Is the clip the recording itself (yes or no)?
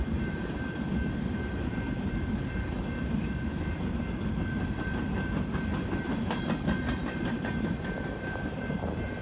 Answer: no